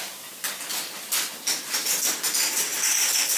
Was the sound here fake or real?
real